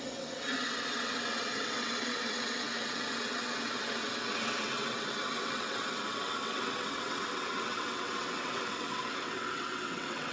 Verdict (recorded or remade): remade